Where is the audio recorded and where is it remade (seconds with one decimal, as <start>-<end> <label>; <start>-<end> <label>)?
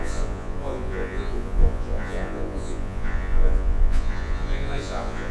0.0-5.3 remade